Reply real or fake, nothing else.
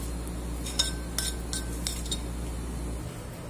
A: real